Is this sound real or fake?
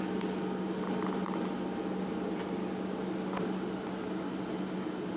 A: real